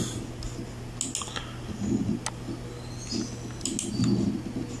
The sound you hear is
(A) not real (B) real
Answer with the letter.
B